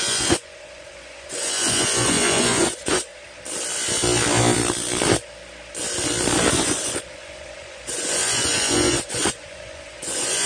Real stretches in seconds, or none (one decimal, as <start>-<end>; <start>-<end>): 3.1-6.5